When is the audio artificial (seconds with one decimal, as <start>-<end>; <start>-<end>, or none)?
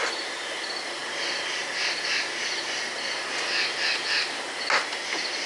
none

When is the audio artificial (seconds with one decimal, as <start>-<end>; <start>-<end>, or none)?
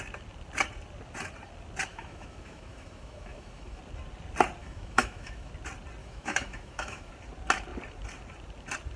1.9-3.8; 4.6-5.5; 6.0-7.1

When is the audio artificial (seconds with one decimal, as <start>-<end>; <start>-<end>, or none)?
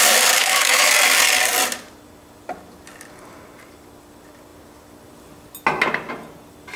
0.4-0.9